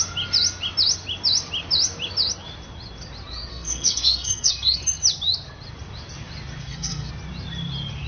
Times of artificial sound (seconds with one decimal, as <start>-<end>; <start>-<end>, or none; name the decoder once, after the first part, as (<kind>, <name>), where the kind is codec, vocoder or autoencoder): 3.5-4.8 (codec, SNAC); 6.6-7.1